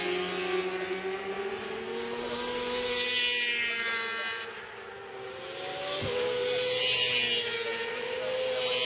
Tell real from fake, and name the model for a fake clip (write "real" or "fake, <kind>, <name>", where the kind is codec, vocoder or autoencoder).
real